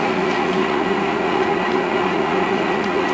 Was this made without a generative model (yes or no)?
no